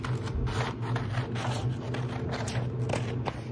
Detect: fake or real real